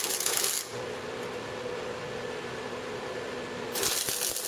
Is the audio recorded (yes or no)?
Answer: yes